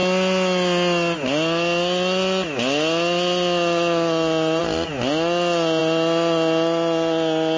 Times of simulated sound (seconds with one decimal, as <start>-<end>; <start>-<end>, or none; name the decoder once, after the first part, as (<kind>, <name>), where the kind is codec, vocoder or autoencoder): none

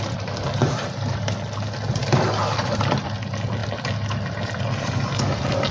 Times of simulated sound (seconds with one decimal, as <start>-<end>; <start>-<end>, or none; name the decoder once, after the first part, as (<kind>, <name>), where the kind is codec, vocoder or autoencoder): 0.6-1.3 (vocoder, BigVGAN v2)

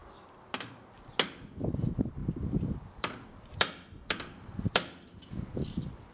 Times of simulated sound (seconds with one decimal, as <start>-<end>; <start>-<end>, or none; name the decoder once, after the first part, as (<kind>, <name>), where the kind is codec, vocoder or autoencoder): 2.2-6.1 (vocoder, BigVGAN v2)

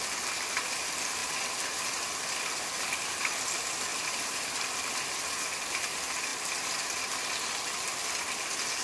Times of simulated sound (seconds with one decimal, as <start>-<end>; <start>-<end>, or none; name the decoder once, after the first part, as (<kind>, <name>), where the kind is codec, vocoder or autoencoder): 3.9-4.9 (vocoder, BigVGAN v2)

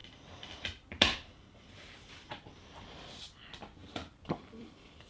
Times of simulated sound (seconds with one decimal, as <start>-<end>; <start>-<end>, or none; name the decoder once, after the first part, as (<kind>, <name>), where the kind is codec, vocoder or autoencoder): 0.0-2.9 (vocoder, BigVGAN v2); 3.8-5.1

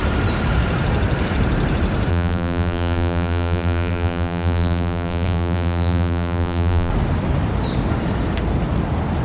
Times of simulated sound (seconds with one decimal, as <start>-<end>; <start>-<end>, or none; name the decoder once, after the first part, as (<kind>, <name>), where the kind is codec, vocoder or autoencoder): 2.1-6.9 (vocoder, BigVGAN v2)

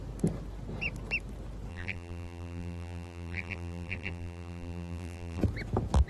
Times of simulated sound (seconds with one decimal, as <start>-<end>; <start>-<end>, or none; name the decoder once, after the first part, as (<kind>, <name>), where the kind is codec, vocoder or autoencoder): 1.7-5.4 (vocoder, BigVGAN v2)